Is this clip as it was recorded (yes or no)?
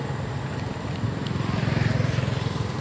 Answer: yes